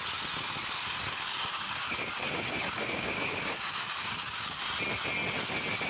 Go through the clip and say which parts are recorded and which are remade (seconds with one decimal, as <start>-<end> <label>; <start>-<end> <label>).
0.0-1.1 recorded; 1.1-4.6 remade; 4.6-5.9 recorded